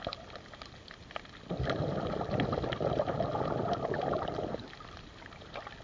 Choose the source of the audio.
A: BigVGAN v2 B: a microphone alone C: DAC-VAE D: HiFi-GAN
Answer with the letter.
B